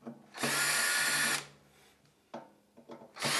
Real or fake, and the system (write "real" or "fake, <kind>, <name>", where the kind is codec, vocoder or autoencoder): real